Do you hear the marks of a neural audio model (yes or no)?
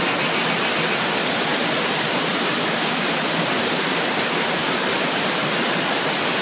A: yes